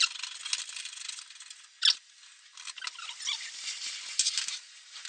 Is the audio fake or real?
real